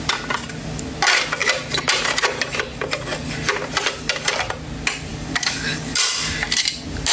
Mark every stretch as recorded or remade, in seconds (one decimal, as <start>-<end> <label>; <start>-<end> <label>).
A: 0.0-5.1 recorded; 5.1-6.0 remade; 6.0-7.1 recorded